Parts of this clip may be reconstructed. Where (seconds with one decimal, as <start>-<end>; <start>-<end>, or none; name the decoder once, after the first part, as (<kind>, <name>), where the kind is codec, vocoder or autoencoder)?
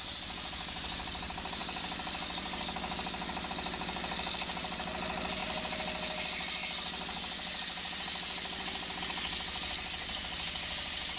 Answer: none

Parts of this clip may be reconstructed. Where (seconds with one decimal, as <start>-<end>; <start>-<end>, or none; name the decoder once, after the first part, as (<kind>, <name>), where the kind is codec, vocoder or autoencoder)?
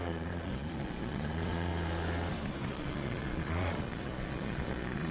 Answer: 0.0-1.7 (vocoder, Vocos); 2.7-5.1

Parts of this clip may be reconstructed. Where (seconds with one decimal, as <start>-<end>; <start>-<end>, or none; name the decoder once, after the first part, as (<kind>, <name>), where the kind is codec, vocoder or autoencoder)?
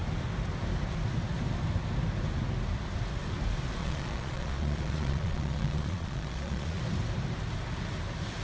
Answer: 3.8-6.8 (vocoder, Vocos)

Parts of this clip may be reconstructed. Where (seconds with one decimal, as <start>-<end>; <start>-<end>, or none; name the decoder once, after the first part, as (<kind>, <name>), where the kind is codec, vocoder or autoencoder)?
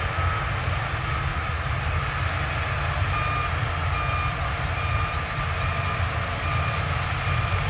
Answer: 1.3-1.8 (vocoder, Vocos)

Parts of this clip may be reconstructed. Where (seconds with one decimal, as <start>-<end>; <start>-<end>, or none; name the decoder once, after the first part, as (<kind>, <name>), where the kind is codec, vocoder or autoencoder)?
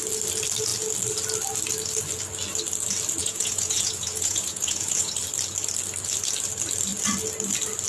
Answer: 3.2-5.1 (vocoder, Vocos)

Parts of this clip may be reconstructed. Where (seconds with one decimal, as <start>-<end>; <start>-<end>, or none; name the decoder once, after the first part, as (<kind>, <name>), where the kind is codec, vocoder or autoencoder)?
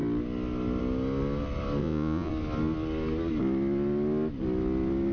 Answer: 1.8-2.3 (vocoder, Vocos)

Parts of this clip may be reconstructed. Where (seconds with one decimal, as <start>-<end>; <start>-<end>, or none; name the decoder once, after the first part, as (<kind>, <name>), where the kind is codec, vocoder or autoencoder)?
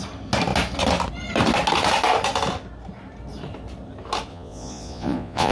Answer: 4.3-5.5 (vocoder, Vocos)